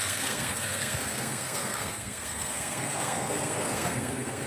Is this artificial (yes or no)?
yes